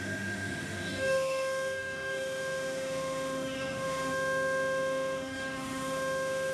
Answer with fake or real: fake